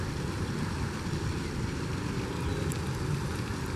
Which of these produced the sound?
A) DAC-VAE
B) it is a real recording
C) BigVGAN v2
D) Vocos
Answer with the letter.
B